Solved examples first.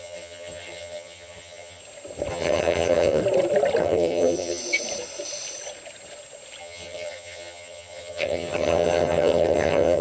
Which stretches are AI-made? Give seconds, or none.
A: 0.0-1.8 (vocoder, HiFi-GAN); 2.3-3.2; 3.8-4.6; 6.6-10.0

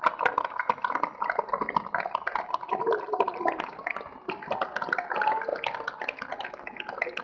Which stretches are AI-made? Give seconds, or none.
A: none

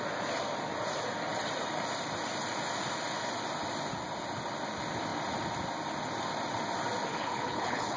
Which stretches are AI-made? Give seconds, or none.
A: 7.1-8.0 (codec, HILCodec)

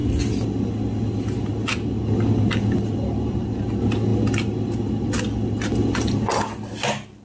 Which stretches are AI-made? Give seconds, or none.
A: none